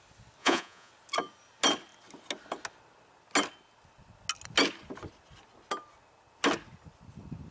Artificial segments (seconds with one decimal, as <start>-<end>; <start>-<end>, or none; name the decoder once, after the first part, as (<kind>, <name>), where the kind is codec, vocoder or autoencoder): 0.4-0.9 (vocoder, Vocos)